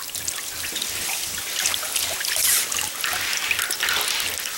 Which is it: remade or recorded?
recorded